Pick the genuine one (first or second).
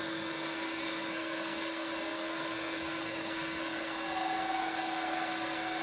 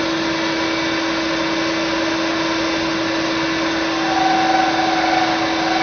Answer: second